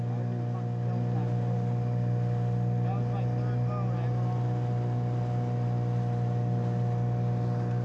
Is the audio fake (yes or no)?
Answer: no